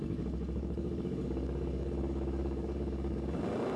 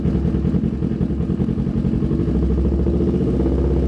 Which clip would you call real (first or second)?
second